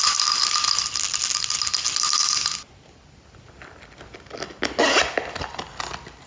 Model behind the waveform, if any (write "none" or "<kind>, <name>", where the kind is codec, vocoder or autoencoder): none